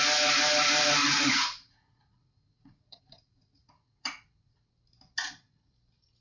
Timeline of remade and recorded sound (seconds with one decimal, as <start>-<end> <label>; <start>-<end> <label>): 0.0-1.0 recorded; 1.0-4.7 remade; 4.7-5.2 recorded; 5.2-5.7 remade; 5.7-6.2 recorded